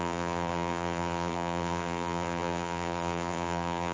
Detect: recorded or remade remade